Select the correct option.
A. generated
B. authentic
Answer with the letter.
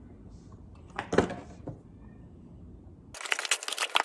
B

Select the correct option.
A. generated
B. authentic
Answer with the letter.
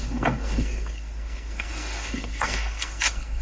A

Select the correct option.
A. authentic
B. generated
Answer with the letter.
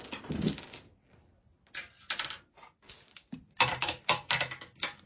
A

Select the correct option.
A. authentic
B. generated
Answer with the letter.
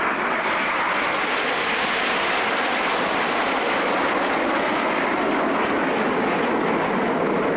A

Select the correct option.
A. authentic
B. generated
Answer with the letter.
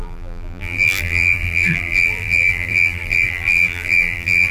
B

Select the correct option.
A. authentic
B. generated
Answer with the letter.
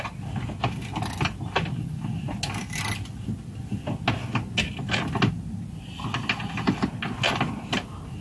A